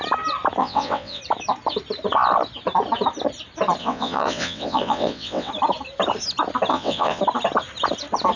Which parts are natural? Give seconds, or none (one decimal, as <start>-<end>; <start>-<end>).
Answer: 0.0-0.6; 1.2-3.8; 5.5-6.7; 7.2-8.4